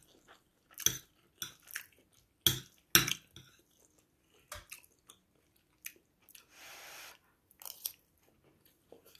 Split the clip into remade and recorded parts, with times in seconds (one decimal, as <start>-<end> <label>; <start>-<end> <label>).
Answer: 0.0-9.2 recorded